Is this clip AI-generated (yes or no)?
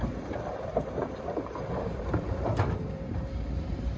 yes